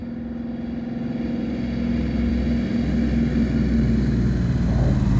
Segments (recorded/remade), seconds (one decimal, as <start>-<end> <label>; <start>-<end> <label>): 0.0-5.2 recorded